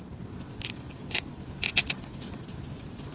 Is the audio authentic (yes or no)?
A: yes